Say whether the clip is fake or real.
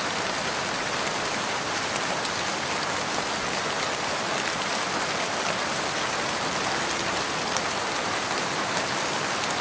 real